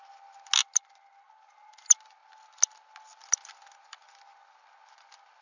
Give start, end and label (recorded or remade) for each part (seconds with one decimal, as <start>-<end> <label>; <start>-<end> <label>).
0.0-5.4 recorded